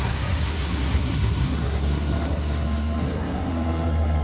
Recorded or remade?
remade